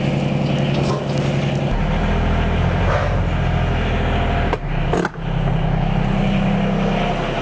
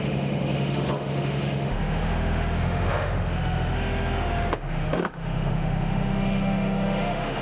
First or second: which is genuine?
first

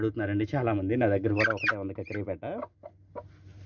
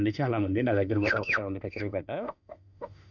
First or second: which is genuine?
first